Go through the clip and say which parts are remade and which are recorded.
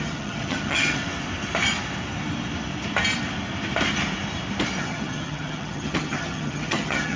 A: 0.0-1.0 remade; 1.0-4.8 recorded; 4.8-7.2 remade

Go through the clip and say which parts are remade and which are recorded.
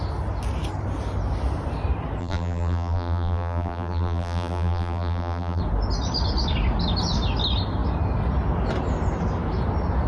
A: 0.0-2.2 recorded; 2.2-5.6 remade; 5.6-10.1 recorded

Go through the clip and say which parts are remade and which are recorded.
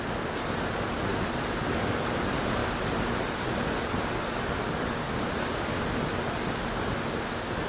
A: 0.0-7.7 recorded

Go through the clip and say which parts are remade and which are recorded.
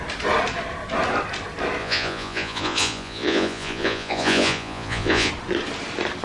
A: 0.0-1.8 recorded; 1.8-5.3 remade; 5.3-6.2 recorded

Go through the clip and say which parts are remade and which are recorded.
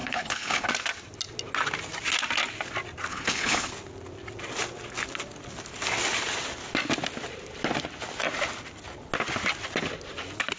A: 0.0-0.7 remade; 0.7-3.1 recorded; 3.1-3.7 remade; 3.7-10.6 recorded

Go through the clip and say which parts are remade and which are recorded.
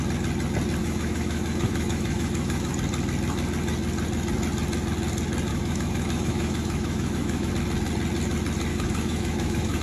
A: 0.0-0.8 recorded; 0.8-2.7 remade; 2.7-5.5 recorded; 5.5-7.5 remade; 7.5-8.7 recorded; 8.7-9.8 remade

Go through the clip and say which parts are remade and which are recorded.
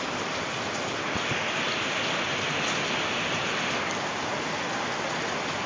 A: 0.0-5.7 recorded